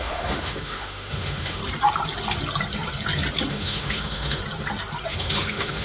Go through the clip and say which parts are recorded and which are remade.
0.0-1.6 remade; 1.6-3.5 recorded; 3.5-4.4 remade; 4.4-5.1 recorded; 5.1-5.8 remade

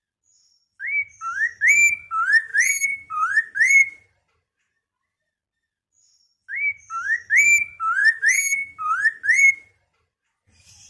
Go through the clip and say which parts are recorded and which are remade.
0.0-2.5 recorded; 2.5-5.4 remade; 5.4-10.9 recorded

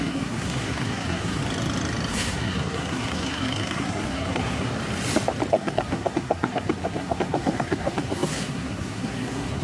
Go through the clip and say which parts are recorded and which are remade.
0.0-1.4 remade; 1.4-2.1 recorded; 2.1-4.7 remade; 4.7-5.5 recorded; 5.5-9.6 remade

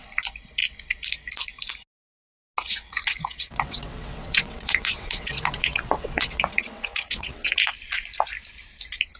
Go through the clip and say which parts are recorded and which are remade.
0.0-2.6 recorded; 2.6-7.6 remade; 7.6-9.2 recorded

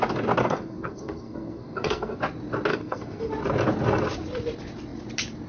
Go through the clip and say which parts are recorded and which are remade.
0.0-0.4 recorded; 0.4-2.2 remade; 2.2-2.7 recorded; 2.7-3.3 remade; 3.3-5.5 recorded

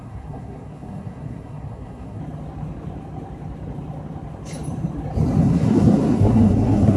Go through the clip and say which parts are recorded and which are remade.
0.0-2.2 remade; 2.2-5.4 recorded; 5.4-7.0 remade